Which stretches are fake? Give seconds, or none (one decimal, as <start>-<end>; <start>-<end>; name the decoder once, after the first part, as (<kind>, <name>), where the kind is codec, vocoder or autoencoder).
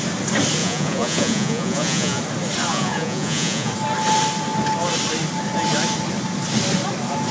0.6-2.2 (vocoder, Vocos); 2.7-3.7